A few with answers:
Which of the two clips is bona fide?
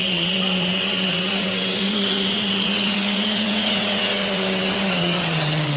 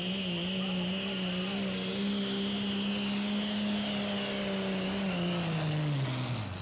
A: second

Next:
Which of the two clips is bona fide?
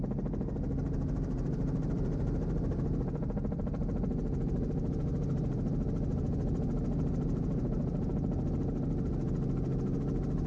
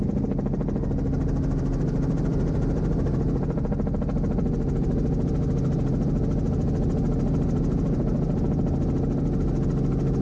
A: second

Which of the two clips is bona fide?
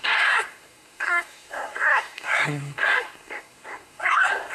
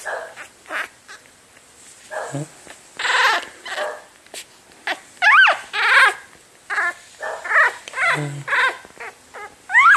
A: second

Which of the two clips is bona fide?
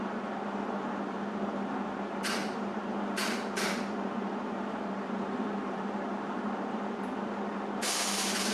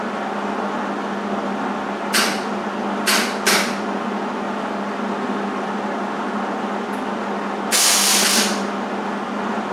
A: second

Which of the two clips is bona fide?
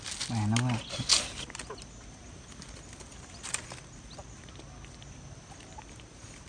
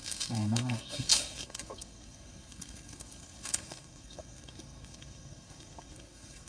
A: first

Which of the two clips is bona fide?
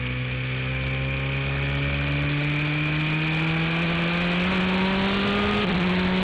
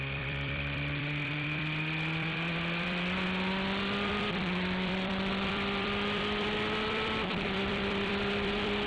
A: first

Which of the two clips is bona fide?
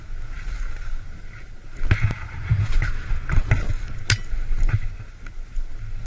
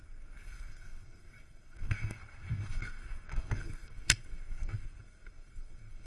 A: first